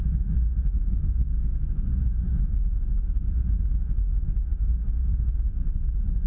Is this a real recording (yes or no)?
no